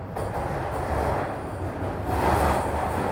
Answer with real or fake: real